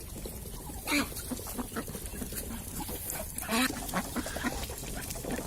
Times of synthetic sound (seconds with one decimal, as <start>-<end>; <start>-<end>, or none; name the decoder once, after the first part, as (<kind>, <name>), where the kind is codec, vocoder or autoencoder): none